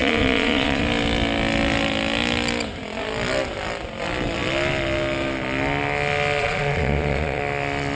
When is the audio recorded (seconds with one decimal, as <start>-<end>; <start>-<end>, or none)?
0.8-6.4; 7.4-8.0